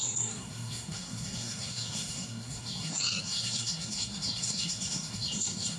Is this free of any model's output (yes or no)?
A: no